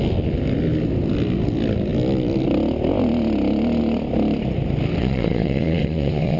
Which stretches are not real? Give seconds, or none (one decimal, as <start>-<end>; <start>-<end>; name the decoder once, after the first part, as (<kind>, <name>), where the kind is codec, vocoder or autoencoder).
5.0-6.4 (vocoder, Vocos)